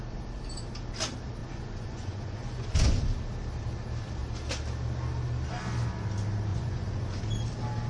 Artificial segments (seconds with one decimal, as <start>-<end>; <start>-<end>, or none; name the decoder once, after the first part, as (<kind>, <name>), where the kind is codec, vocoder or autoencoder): 1.4-3.0 (vocoder, Vocos); 6.5-7.2